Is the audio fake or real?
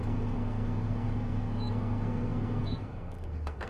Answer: fake